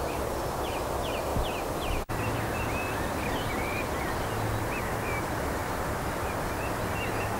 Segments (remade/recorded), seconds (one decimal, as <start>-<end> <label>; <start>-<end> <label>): 0.0-1.3 recorded; 1.3-4.3 remade; 4.3-5.6 recorded; 5.6-6.4 remade; 6.4-7.4 recorded